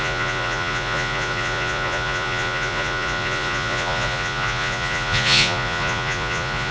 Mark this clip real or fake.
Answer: fake